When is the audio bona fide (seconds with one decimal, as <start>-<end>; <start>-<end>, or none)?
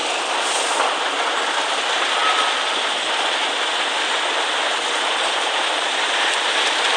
2.2-3.8